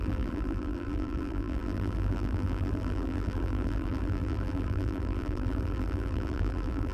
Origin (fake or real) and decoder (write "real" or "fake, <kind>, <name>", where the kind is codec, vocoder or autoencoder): fake, vocoder, BigVGAN v2